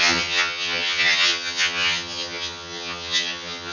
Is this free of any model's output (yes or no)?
no